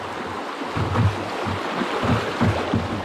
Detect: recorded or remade recorded